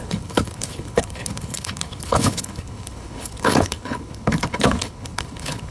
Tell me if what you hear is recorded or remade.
remade